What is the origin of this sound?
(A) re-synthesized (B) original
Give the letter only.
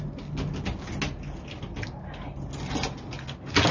B